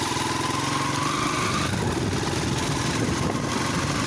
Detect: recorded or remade recorded